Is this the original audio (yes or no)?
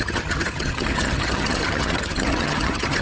no